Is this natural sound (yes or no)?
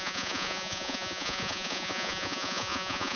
no